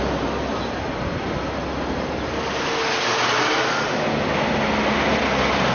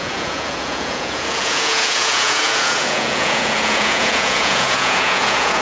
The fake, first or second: second